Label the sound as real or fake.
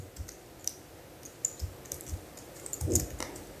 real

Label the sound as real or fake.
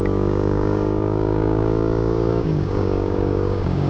fake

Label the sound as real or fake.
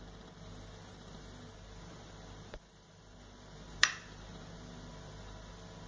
fake